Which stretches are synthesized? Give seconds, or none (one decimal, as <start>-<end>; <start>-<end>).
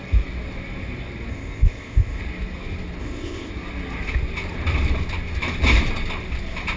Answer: 1.3-2.2; 3.0-3.5